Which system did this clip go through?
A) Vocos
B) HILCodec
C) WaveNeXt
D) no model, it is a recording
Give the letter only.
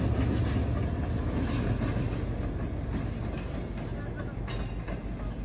D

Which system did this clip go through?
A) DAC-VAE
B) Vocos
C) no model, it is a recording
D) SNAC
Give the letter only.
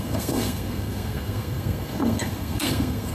D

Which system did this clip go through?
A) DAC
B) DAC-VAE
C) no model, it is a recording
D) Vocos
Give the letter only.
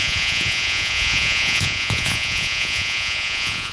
D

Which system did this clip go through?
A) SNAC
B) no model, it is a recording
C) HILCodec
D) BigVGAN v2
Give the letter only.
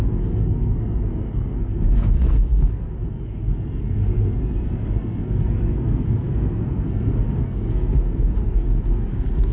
A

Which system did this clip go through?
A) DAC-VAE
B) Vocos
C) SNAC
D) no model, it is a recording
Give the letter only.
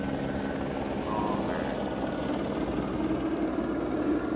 D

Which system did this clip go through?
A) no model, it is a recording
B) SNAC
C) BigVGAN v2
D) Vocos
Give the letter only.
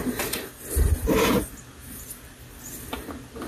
A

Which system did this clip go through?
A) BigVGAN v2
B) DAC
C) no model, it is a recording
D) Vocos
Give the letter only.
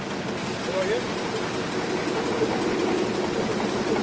C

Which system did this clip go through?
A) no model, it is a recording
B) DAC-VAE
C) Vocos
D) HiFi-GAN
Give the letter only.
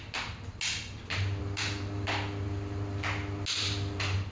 A